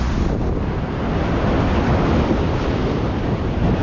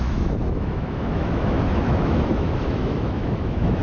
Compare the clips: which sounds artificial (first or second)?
second